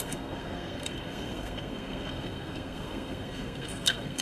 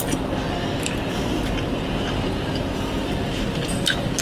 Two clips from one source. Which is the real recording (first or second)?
second